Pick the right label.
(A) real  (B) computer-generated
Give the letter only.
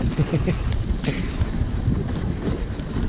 A